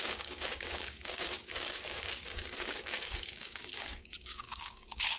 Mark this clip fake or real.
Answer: fake